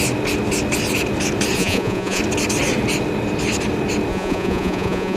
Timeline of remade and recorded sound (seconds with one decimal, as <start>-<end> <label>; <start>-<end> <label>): 0.0-1.6 recorded; 1.6-2.2 remade; 2.2-4.1 recorded; 4.1-5.2 remade